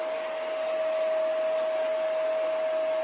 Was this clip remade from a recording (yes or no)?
no